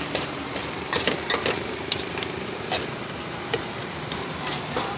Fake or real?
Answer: fake